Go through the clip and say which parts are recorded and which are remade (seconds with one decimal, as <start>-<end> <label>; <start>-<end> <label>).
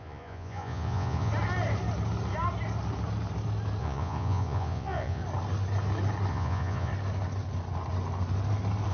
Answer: 0.0-1.3 remade; 1.3-3.8 recorded; 3.8-5.2 remade; 5.2-6.3 recorded; 6.3-6.9 remade; 6.9-8.9 recorded